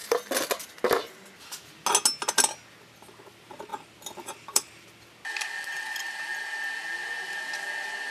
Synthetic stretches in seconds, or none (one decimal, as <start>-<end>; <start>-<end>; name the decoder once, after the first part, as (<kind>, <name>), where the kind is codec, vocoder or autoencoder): 3.7-4.6 (vocoder, BigVGAN v2)